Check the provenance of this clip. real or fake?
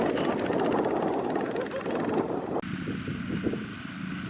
real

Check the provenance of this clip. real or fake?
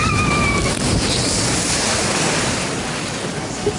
real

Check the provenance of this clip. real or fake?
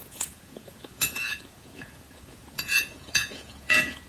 fake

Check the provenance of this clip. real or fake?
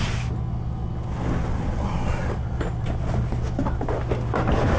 real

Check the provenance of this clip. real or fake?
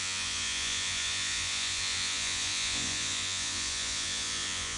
fake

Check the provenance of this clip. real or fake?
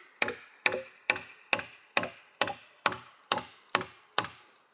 real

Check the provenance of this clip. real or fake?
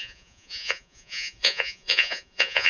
fake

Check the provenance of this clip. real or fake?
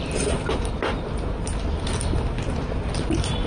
real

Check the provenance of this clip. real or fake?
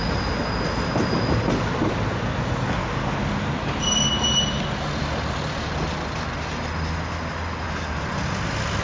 real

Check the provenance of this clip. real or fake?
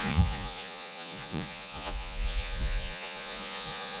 fake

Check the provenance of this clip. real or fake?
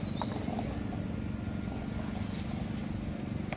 real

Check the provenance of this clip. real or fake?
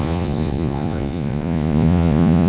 fake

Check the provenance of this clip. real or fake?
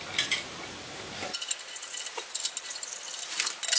real